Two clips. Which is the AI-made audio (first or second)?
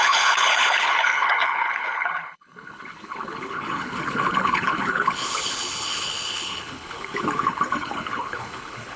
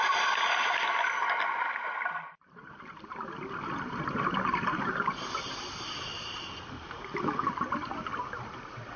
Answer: first